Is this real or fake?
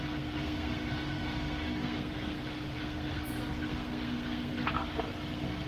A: fake